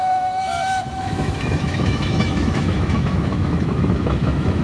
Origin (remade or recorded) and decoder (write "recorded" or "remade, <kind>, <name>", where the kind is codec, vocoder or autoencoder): remade, autoencoder, DAC-VAE